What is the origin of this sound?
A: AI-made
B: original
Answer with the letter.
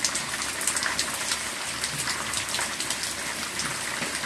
B